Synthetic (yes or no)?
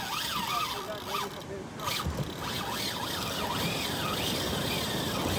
no